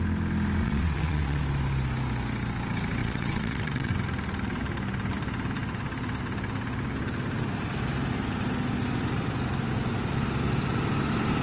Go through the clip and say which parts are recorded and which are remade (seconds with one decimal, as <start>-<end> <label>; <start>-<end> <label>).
0.0-0.6 recorded; 0.6-1.4 remade; 1.4-3.0 recorded; 3.0-3.9 remade; 3.9-11.4 recorded